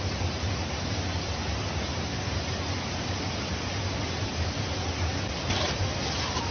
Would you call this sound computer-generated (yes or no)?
no